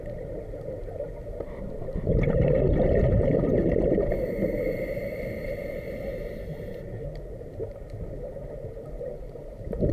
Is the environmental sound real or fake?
fake